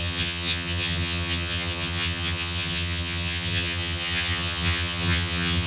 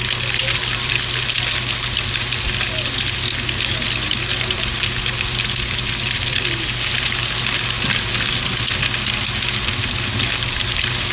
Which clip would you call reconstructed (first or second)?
first